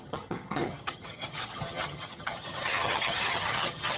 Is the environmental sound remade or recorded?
remade